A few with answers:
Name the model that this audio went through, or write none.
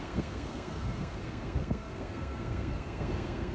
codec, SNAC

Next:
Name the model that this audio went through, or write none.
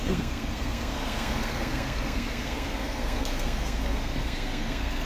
codec, SNAC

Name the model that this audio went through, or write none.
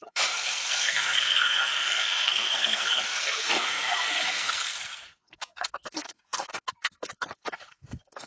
codec, SNAC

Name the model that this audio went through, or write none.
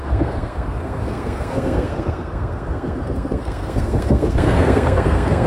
codec, SNAC